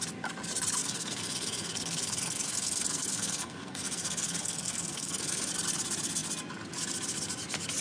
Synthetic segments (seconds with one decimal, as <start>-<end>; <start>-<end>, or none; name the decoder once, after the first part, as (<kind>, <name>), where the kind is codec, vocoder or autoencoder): 0.8-5.5 (codec, SNAC)